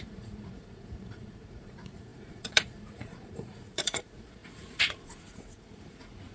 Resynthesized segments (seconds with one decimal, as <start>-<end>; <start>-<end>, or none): 0.0-6.3